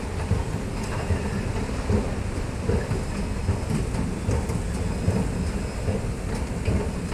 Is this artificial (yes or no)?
no